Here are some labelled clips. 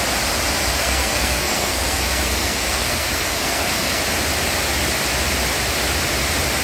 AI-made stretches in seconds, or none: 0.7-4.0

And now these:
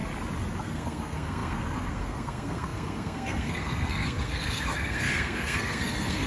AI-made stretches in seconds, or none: 0.6-6.3

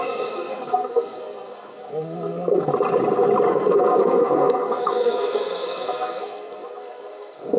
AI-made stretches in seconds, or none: 0.0-2.7; 3.5-7.6

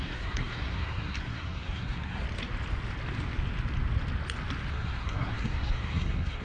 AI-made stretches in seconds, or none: 0.0-2.2; 4.7-6.4

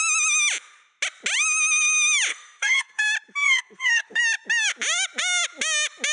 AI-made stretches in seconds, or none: 2.3-3.0; 3.4-4.2

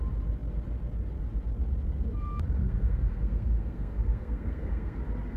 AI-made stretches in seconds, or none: 2.6-5.0